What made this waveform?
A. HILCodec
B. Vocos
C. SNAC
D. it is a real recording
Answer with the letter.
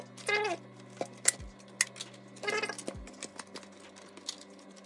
D